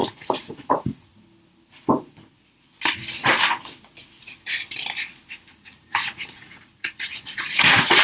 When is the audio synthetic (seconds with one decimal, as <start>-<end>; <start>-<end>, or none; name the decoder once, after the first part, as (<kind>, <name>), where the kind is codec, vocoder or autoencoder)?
0.0-1.1 (vocoder, Vocos); 5.5-8.0